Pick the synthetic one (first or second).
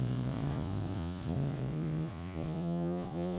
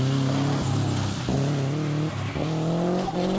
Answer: first